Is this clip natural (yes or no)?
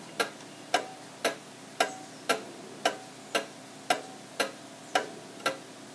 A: yes